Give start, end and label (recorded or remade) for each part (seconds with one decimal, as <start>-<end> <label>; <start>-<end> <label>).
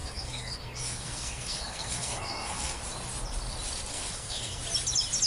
0.0-2.8 remade; 2.8-3.9 recorded; 3.9-4.6 remade; 4.6-5.3 recorded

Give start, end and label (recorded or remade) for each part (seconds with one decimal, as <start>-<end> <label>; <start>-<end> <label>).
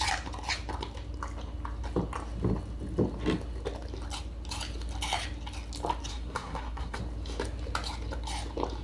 0.0-6.1 recorded; 6.1-7.0 remade; 7.0-8.8 recorded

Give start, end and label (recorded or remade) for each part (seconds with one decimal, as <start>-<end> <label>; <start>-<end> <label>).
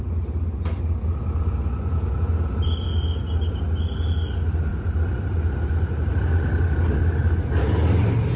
0.0-4.7 recorded; 4.7-6.1 remade; 6.1-8.4 recorded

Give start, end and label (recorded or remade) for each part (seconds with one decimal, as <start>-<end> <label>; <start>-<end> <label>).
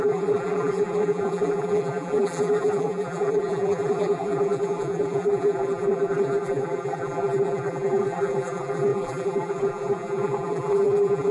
0.0-11.3 remade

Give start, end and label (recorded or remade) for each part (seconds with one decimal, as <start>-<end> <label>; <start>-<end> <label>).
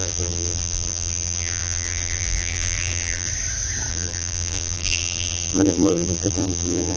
0.0-3.3 remade; 3.3-3.9 recorded; 3.9-7.0 remade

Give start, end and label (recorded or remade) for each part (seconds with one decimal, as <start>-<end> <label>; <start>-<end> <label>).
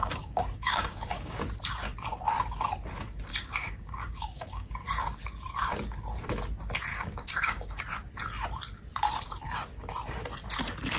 0.0-1.4 remade; 1.4-3.3 recorded; 3.3-4.7 remade; 4.7-6.9 recorded; 6.9-7.8 remade; 7.8-11.0 recorded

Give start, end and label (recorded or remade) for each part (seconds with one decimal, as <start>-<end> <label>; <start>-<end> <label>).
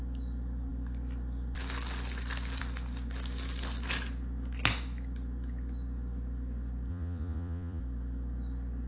0.0-6.9 recorded; 6.9-7.8 remade; 7.8-8.9 recorded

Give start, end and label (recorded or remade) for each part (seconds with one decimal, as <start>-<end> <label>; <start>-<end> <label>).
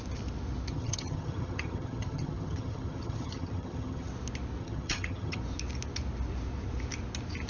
0.0-0.7 recorded; 0.7-4.1 remade; 4.1-4.6 recorded; 4.6-5.4 remade; 5.4-7.5 recorded